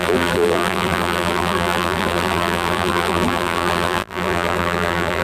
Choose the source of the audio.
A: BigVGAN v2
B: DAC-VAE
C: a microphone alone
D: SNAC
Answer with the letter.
A